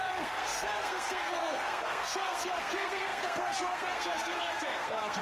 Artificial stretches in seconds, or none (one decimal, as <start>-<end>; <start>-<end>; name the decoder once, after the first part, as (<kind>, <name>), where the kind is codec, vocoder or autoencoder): 0.0-5.2 (codec, SNAC)